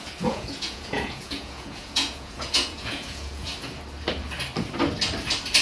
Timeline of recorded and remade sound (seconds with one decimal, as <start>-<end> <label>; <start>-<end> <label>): 0.0-3.5 remade; 3.5-5.6 recorded

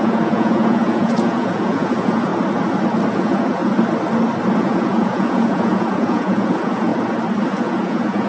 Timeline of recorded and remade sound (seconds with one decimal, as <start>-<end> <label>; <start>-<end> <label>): 0.0-2.3 remade; 2.3-3.1 recorded; 3.1-3.6 remade; 3.6-4.6 recorded; 4.6-6.9 remade; 6.9-7.5 recorded; 7.5-8.3 remade

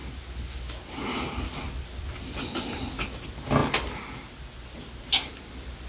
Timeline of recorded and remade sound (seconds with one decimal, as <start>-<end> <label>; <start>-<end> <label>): 0.0-5.9 recorded

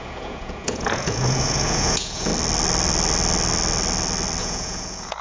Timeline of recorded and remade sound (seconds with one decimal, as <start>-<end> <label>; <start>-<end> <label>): 0.0-2.3 remade; 2.3-4.4 recorded; 4.4-5.2 remade

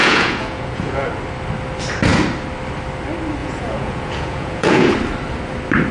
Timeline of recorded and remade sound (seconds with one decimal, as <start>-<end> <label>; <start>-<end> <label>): 0.0-1.1 remade; 1.1-3.4 recorded; 3.4-4.9 remade; 4.9-5.9 recorded

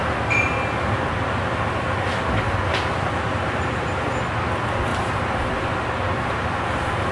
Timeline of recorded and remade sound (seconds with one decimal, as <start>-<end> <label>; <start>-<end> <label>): 0.0-7.1 recorded

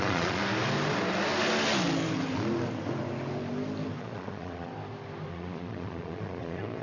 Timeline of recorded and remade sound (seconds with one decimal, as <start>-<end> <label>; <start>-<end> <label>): 0.0-0.4 remade; 0.4-4.0 recorded; 4.0-4.7 remade; 4.7-5.3 recorded; 5.3-6.8 remade

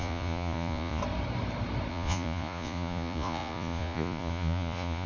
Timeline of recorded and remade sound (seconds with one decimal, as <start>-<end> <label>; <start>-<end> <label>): 0.0-1.0 remade; 1.0-1.9 recorded; 1.9-5.1 remade